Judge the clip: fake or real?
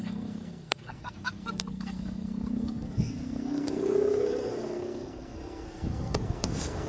fake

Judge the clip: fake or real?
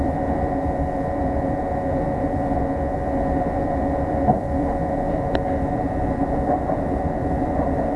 fake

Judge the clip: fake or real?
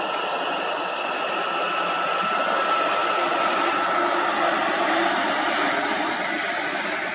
real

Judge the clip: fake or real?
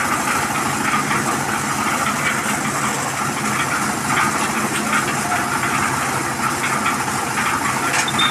real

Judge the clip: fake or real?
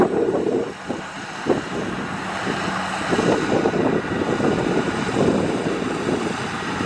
real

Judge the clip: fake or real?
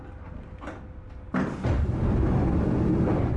real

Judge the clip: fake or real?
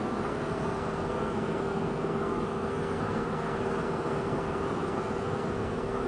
fake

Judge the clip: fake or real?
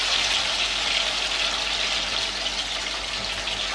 real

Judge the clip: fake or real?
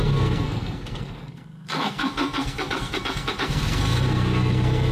fake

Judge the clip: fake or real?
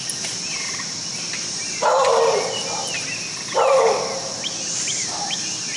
real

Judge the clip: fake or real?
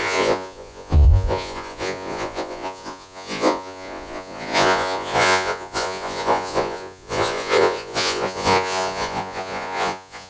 fake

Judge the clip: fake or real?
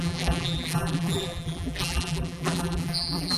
fake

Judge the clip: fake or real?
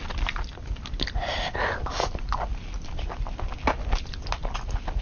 real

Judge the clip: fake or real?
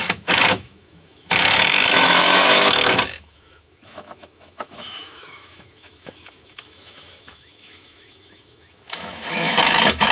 fake